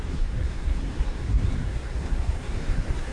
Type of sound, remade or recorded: remade